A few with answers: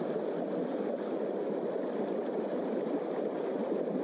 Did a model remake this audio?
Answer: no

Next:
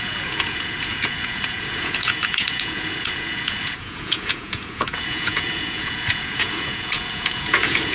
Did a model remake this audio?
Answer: yes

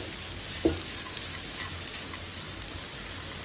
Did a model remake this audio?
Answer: no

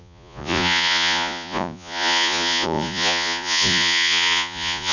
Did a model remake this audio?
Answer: yes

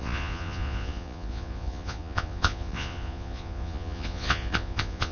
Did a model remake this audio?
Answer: yes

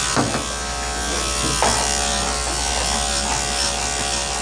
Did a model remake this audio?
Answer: no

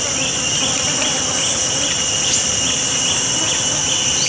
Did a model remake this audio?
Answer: no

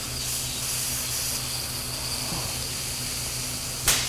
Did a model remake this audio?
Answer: no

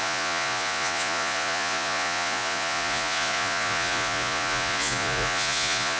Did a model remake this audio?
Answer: yes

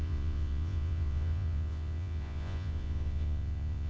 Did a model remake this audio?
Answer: yes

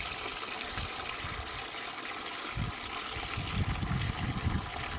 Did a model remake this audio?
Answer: no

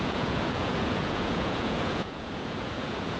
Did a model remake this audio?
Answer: yes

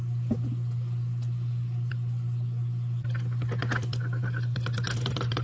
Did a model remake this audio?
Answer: no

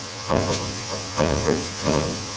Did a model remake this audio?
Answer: yes